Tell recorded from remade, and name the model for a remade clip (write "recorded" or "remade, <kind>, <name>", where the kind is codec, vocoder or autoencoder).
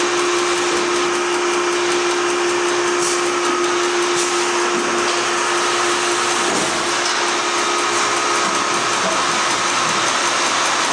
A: recorded